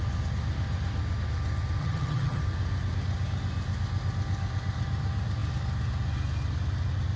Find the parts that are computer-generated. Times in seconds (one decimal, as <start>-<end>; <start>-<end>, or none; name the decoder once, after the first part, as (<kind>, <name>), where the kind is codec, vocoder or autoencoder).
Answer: 1.8-2.4 (vocoder, HiFi-GAN)